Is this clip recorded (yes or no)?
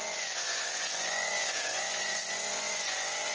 no